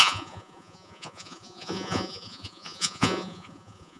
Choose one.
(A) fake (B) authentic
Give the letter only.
A